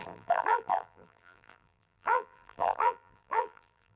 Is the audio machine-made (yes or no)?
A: yes